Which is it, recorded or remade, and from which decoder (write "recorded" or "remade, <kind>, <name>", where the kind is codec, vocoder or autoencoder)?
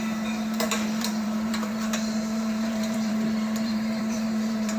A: remade, vocoder, BigVGAN v2